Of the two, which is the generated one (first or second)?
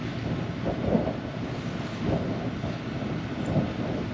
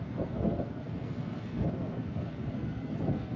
second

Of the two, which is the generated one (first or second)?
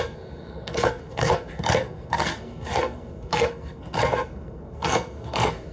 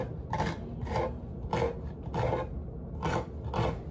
first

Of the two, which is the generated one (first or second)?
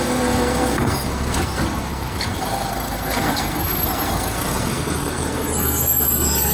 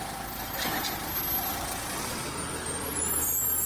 first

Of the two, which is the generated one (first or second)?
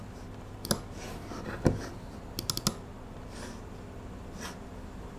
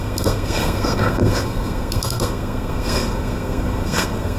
second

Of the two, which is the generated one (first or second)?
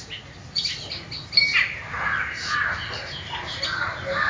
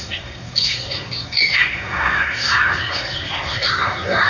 second